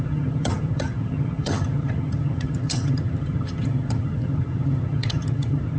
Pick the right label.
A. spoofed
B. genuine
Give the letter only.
A